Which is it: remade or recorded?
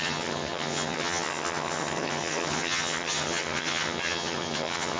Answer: remade